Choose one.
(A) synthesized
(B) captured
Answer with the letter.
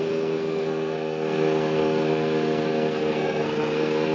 A